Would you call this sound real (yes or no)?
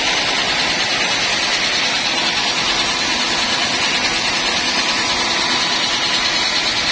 yes